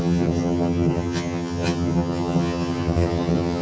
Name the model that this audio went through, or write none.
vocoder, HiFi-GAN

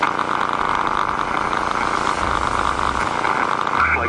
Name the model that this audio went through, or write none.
none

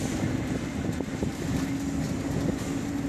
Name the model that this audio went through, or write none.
none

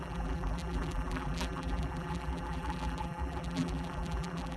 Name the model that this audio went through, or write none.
vocoder, BigVGAN v2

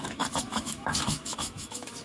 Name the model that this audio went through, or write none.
autoencoder, DAC-VAE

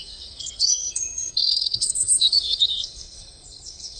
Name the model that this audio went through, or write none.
codec, SNAC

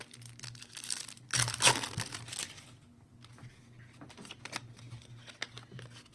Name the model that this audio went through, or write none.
none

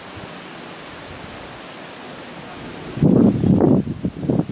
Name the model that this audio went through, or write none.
none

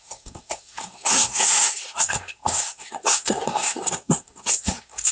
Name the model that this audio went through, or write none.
codec, SNAC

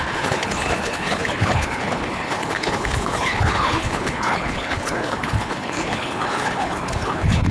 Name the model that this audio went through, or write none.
codec, HILCodec